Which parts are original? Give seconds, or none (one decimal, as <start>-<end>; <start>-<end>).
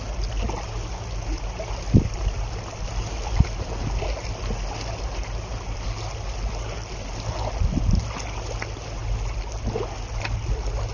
0.0-10.9